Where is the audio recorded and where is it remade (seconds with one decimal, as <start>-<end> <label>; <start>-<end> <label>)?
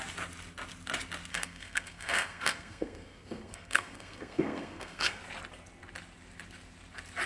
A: 0.0-1.3 recorded; 1.3-5.2 remade; 5.2-7.3 recorded